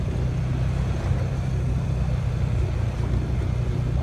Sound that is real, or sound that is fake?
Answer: real